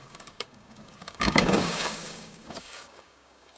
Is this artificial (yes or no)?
yes